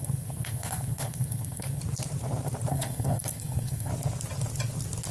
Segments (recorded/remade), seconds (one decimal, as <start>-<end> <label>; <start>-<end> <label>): 0.0-1.8 remade; 1.8-2.7 recorded; 2.7-3.9 remade; 3.9-5.1 recorded

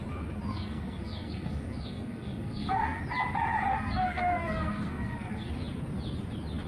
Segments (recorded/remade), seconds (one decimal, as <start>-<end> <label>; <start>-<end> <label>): 0.0-0.5 recorded; 0.5-3.0 remade; 3.0-3.7 recorded; 3.7-5.5 remade; 5.5-6.7 recorded